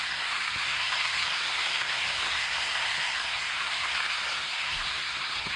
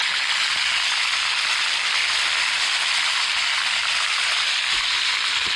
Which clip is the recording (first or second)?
second